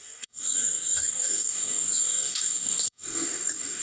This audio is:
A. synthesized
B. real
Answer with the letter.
A